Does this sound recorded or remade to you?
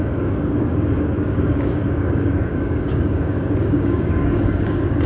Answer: remade